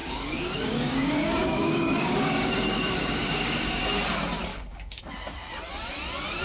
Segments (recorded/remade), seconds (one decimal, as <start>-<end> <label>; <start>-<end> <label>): 0.0-3.8 remade; 3.8-4.5 recorded; 4.5-5.0 remade; 5.0-6.4 recorded